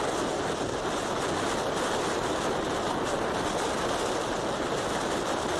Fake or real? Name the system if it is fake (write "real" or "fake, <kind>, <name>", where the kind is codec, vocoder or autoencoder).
real